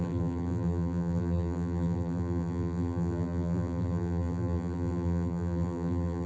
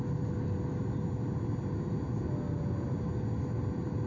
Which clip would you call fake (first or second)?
first